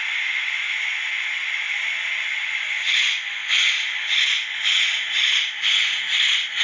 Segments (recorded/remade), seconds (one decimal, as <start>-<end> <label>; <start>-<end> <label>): 0.0-6.6 recorded